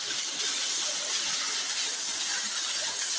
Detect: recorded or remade recorded